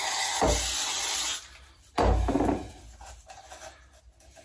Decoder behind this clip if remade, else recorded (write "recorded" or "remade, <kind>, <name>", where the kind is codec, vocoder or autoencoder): recorded